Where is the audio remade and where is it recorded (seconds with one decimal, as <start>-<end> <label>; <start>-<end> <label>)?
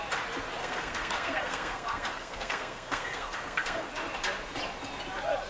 0.0-0.6 recorded; 0.6-3.9 remade; 3.9-5.5 recorded